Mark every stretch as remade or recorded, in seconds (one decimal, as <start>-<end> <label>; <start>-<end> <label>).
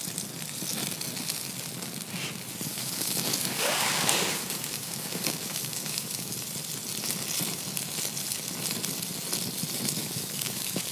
0.0-2.7 recorded; 2.7-6.3 remade; 6.3-10.0 recorded; 10.0-10.9 remade